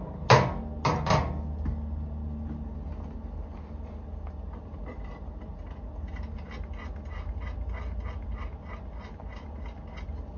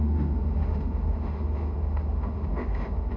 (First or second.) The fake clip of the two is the second